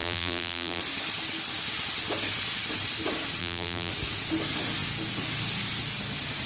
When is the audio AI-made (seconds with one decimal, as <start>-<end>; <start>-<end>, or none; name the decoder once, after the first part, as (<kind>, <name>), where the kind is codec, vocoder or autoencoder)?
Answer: 0.0-0.8 (vocoder, BigVGAN v2); 3.4-3.9